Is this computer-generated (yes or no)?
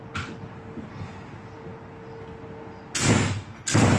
no